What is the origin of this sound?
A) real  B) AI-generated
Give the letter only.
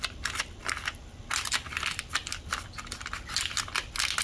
A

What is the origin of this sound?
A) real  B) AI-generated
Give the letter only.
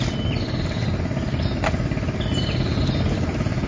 B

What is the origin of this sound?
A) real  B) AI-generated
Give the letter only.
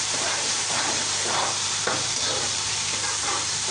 B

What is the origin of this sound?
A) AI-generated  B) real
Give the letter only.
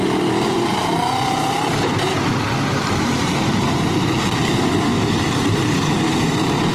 A